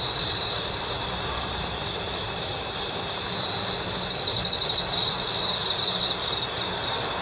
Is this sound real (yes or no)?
no